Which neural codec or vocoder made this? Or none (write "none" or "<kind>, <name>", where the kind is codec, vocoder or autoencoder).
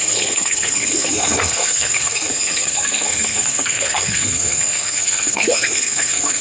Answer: codec, SNAC